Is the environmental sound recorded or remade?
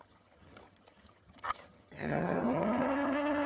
remade